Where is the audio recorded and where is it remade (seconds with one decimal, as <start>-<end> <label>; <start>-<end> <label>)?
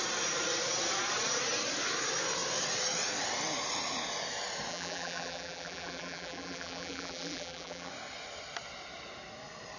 0.0-4.7 recorded; 4.7-7.9 remade; 7.9-9.8 recorded